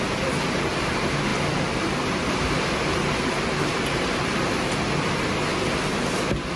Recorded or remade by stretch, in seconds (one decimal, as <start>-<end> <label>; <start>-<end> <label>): 0.0-6.6 recorded